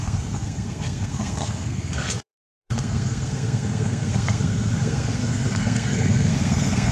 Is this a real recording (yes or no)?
no